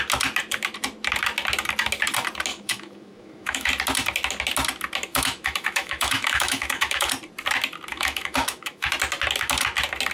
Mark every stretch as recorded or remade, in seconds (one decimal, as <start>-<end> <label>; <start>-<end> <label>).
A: 0.0-2.5 recorded; 2.5-3.7 remade; 3.7-5.1 recorded; 5.1-7.1 remade; 7.1-7.9 recorded; 7.9-8.9 remade; 8.9-10.1 recorded